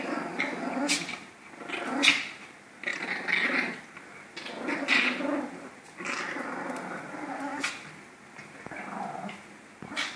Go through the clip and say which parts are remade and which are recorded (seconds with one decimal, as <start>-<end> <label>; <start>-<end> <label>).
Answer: 0.0-10.2 recorded